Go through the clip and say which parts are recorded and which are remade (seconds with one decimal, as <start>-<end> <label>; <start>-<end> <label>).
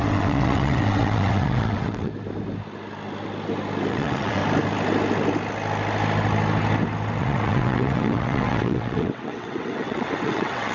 0.0-2.1 remade; 2.1-3.9 recorded; 3.9-4.4 remade; 4.4-7.2 recorded; 7.2-10.7 remade